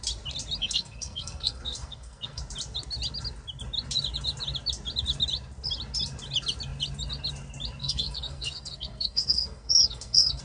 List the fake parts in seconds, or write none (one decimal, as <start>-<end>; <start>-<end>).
0.6-2.4; 7.8-10.4